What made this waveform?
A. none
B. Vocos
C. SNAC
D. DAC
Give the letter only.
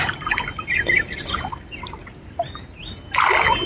A